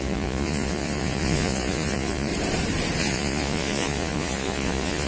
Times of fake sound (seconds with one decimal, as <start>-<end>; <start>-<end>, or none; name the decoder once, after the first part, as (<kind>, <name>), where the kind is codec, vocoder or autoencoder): 0.0-2.3 (vocoder, Vocos); 3.0-5.1